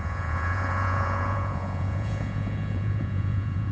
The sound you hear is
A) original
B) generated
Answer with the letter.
B